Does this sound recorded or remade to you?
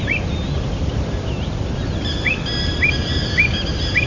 recorded